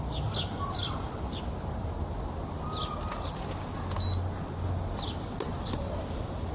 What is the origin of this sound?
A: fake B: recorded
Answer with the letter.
B